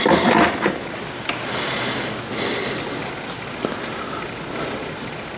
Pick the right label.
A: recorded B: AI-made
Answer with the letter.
A